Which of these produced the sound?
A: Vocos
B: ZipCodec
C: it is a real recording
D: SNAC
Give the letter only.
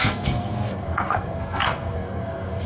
D